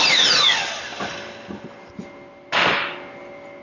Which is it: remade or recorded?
recorded